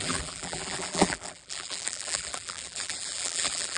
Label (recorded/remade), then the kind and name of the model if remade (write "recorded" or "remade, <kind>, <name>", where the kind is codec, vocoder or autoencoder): remade, vocoder, BigVGAN v2